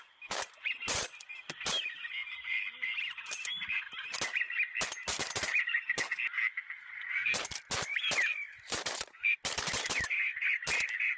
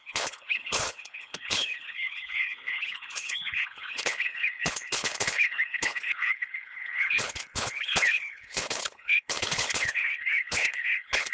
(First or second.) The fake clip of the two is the second